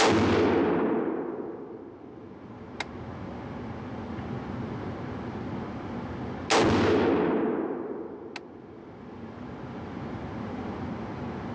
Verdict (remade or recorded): recorded